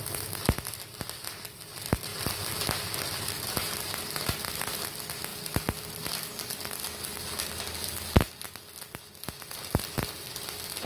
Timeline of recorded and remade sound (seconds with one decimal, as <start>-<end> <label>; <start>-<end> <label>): 0.0-10.9 recorded